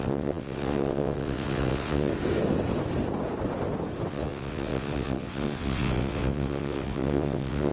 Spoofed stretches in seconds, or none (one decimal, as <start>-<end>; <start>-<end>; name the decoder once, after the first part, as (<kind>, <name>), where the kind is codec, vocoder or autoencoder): 0.0-2.1 (vocoder, WaveNeXt); 4.1-7.7